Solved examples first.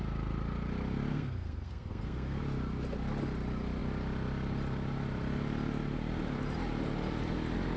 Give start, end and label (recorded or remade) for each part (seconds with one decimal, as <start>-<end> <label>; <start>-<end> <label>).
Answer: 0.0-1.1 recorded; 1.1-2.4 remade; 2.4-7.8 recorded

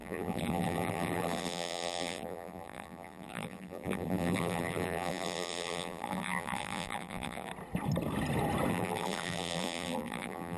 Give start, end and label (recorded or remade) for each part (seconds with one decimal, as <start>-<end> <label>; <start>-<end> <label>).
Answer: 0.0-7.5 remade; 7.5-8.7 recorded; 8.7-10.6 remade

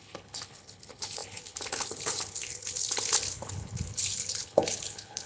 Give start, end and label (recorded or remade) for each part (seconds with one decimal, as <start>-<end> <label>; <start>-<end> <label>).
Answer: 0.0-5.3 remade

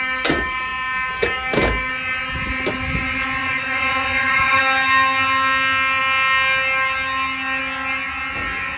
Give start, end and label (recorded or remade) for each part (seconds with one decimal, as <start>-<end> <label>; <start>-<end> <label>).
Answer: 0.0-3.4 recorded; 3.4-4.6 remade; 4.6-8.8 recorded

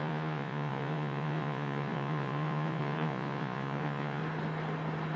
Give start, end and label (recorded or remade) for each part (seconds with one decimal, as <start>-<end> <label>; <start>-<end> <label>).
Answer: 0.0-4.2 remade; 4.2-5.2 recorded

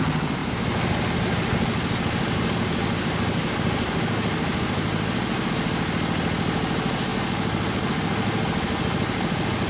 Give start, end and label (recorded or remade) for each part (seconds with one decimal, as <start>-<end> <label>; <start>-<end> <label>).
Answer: 0.0-9.7 recorded

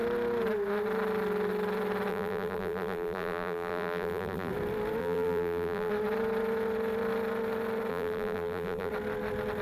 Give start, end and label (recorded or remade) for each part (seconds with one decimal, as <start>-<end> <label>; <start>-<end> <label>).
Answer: 0.0-2.1 recorded; 2.1-4.5 remade; 4.5-5.0 recorded; 5.0-5.9 remade; 5.9-7.9 recorded; 7.9-8.9 remade; 8.9-9.6 recorded